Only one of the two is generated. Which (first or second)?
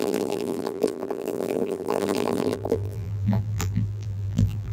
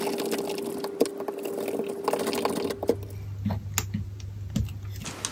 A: first